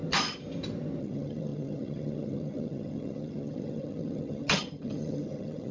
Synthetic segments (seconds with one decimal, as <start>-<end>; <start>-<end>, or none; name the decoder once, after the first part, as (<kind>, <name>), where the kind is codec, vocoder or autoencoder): 1.0-5.7 (vocoder, HiFi-GAN)